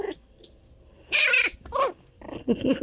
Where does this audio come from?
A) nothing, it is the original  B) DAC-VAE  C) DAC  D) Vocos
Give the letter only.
A